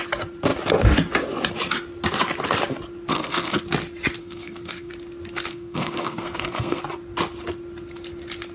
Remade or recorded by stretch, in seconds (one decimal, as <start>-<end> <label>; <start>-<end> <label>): 0.0-3.1 recorded; 3.1-3.6 remade; 3.6-4.2 recorded; 4.2-4.9 remade; 4.9-5.5 recorded; 5.5-6.8 remade; 6.8-8.5 recorded